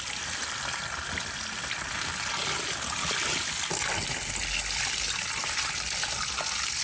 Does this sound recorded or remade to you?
recorded